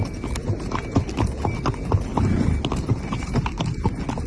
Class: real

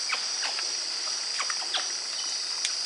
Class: real